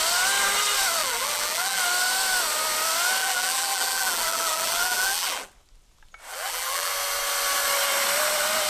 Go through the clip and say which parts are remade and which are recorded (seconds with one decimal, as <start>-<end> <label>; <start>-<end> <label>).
0.0-1.0 recorded; 1.0-1.8 remade; 1.8-3.2 recorded; 3.2-5.5 remade; 5.5-6.3 recorded; 6.3-6.9 remade; 6.9-8.7 recorded